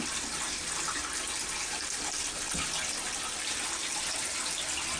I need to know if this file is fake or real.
fake